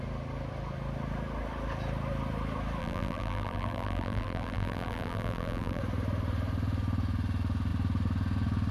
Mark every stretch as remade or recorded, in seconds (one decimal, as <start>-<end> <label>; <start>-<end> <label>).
0.0-2.8 recorded; 2.8-5.8 remade; 5.8-8.7 recorded